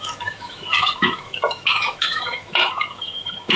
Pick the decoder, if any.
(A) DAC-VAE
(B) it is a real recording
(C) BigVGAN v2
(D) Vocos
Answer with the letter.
A